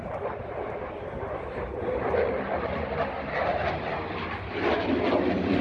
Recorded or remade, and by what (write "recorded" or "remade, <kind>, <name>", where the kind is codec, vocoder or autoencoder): recorded